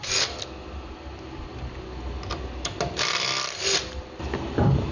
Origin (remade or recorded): recorded